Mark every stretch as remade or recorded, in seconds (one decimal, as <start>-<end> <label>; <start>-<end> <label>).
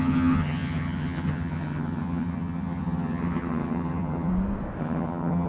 0.0-4.3 remade; 4.3-4.8 recorded; 4.8-5.5 remade